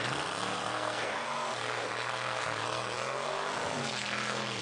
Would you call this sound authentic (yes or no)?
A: no